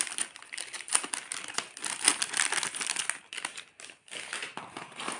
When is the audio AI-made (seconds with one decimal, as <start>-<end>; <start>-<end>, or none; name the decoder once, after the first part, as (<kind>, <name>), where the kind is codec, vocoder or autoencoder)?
none

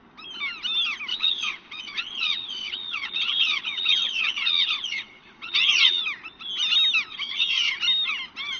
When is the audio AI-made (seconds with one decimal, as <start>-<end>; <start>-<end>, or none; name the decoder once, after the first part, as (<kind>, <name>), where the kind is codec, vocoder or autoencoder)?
1.1-6.0 (vocoder, WaveNeXt); 7.1-7.7

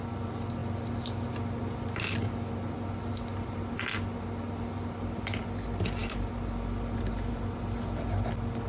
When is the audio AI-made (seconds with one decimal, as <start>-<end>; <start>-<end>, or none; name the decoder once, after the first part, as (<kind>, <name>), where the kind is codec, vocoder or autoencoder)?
none

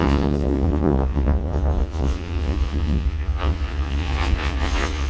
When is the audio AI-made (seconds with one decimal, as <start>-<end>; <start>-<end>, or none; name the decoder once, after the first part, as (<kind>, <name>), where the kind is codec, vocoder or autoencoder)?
0.0-5.1 (vocoder, Vocos)

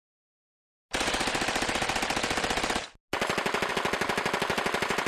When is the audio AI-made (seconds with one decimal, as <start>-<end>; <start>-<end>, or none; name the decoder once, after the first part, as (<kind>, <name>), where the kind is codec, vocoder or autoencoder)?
none

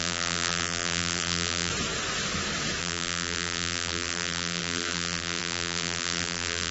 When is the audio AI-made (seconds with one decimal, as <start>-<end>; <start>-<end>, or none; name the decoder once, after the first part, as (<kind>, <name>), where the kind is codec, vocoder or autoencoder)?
0.0-1.7 (vocoder, BigVGAN v2); 2.8-6.7